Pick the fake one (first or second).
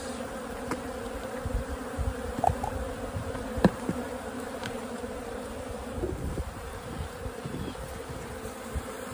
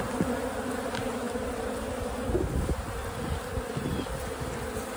first